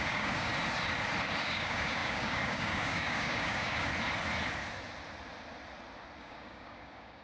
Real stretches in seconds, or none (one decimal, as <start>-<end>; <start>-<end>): 0.5-1.4; 3.9-6.2